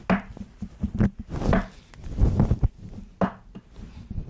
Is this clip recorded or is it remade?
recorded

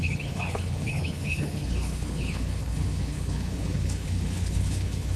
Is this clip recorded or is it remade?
remade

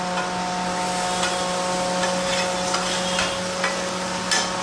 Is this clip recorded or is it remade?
recorded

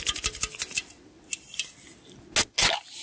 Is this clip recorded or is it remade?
recorded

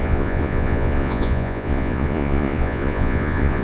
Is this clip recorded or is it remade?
remade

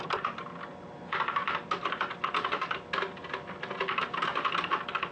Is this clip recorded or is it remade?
recorded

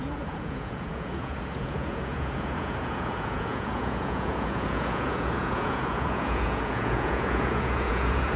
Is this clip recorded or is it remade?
remade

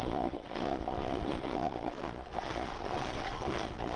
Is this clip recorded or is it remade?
remade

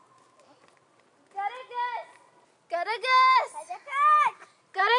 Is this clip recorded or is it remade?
recorded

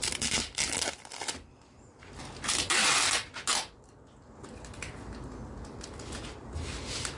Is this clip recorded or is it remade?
recorded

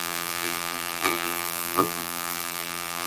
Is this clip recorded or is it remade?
remade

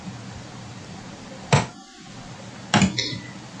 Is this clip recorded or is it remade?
recorded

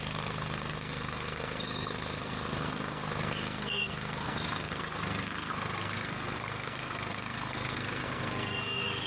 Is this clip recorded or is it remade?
remade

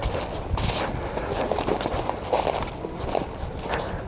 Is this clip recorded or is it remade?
recorded